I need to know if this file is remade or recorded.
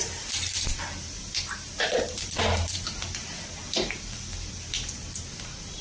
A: remade